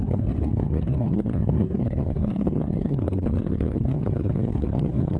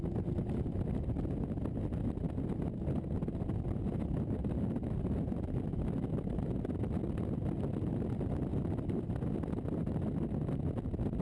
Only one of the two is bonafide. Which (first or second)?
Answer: second